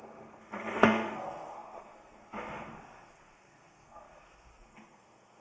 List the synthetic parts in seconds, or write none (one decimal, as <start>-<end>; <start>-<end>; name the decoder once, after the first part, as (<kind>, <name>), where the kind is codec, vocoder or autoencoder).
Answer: 0.0-5.4 (codec, SNAC)